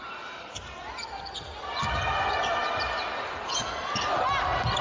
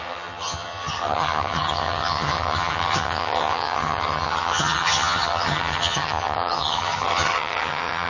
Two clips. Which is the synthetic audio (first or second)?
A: second